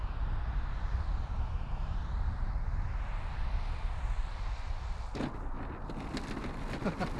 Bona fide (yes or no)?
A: yes